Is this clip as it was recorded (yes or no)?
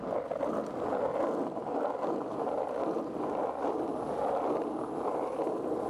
yes